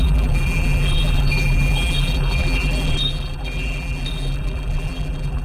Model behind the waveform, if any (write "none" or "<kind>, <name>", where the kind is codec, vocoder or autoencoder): vocoder, BigVGAN v2